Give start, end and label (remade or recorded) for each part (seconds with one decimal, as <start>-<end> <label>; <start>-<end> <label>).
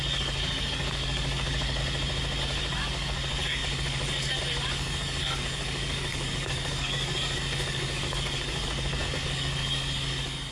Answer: 0.0-1.8 remade; 1.8-2.4 recorded; 2.4-10.5 remade